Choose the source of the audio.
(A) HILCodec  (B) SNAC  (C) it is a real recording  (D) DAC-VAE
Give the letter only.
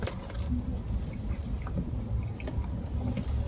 C